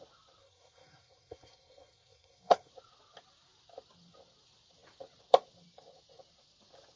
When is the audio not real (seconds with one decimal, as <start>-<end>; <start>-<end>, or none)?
0.4-2.7